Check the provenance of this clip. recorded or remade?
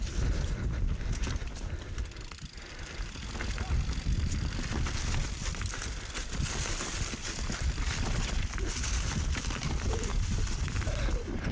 remade